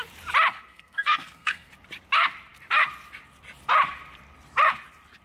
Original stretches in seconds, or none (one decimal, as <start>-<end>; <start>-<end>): 0.0-0.7; 1.7-5.2